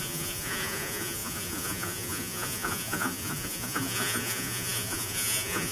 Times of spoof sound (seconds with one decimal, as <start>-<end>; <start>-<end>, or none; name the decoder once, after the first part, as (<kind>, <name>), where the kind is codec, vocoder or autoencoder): 0.0-5.7 (vocoder, Vocos)